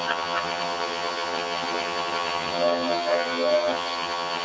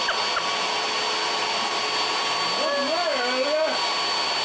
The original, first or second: second